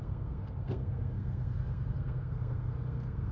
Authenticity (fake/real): fake